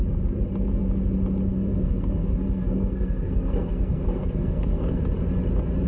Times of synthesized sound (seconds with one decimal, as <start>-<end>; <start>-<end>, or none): 1.5-5.0